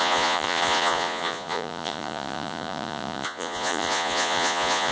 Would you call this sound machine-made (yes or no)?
yes